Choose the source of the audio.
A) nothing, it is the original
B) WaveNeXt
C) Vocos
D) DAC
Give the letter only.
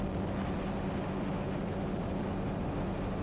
A